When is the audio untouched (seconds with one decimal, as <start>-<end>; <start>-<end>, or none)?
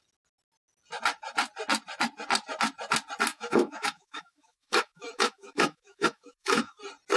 0.0-3.3; 6.8-7.2